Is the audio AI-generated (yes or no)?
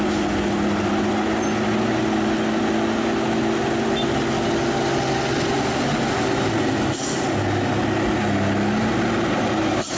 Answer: no